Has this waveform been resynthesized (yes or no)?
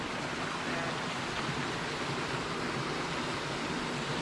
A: no